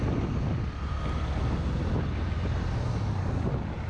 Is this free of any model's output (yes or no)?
yes